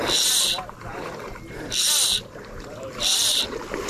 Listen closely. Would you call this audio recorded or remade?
remade